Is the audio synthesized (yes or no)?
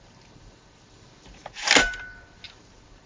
no